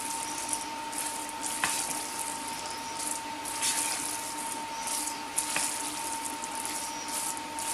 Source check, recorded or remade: recorded